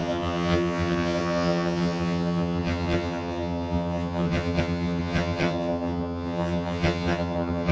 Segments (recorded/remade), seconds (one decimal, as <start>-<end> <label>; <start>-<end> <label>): 0.0-7.7 remade